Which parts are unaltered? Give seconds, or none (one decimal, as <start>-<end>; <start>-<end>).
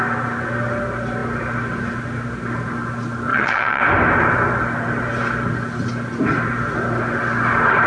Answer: 0.0-3.3; 3.8-7.9